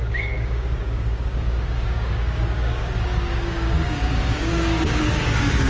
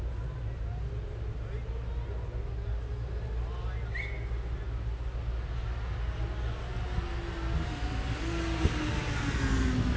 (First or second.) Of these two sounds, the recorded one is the second